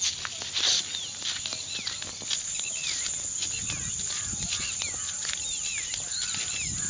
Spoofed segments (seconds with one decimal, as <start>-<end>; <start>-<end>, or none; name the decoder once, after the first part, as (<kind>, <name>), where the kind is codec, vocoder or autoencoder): none